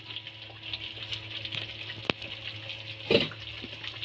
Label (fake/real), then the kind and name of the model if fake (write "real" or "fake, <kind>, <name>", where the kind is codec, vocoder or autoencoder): real